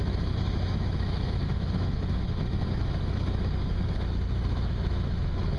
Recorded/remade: remade